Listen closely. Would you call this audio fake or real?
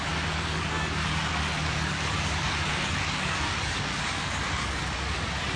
fake